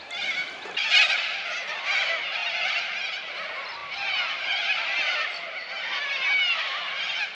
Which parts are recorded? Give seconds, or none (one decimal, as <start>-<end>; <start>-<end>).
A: 0.0-7.3